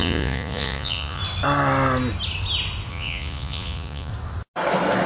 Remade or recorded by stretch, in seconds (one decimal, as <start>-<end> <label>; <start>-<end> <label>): 0.0-1.2 remade; 1.2-2.9 recorded; 2.9-4.1 remade; 4.1-5.1 recorded